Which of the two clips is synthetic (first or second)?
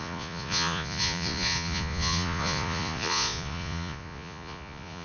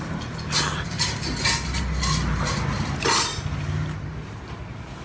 first